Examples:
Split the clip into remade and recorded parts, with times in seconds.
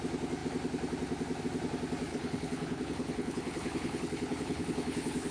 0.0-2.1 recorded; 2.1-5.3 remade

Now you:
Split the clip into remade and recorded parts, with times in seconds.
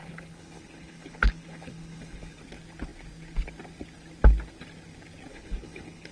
0.0-2.4 remade; 2.4-5.3 recorded; 5.3-6.1 remade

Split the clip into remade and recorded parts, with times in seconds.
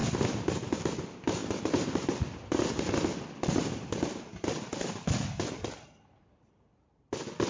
0.0-7.5 recorded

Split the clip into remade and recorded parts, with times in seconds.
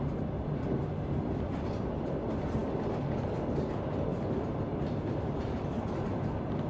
0.0-6.7 recorded